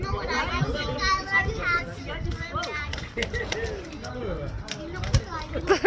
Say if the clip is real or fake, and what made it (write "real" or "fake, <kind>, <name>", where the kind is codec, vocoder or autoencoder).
real